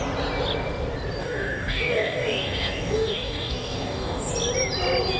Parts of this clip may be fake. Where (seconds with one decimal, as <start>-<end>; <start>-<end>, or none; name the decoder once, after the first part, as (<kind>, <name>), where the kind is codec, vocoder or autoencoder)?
1.2-4.3 (codec, DAC)